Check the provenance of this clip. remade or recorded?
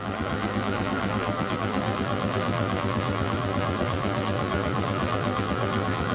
remade